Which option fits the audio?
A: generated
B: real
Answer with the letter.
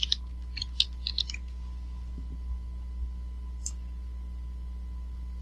A